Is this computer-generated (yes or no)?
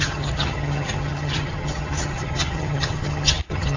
yes